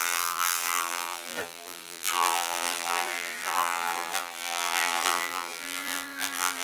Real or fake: fake